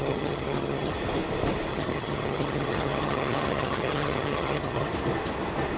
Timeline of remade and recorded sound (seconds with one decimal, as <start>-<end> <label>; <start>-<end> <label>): 0.0-0.9 remade; 0.9-1.7 recorded; 1.7-4.9 remade; 4.9-5.8 recorded